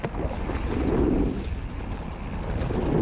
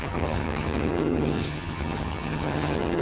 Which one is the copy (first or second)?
second